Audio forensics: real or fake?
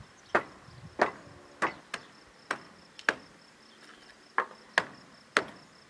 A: real